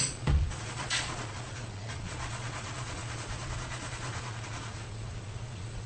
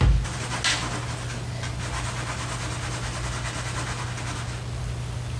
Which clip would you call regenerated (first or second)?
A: first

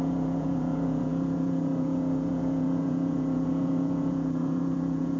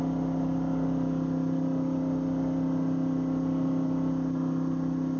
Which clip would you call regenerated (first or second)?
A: first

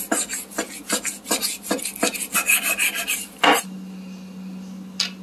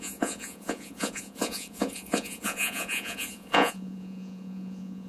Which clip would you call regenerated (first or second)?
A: second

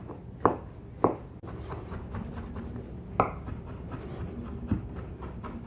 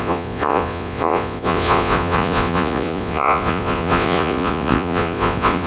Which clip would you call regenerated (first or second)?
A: second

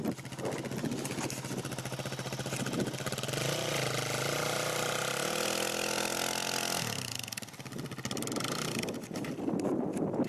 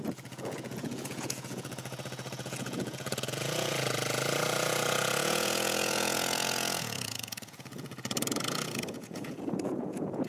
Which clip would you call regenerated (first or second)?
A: second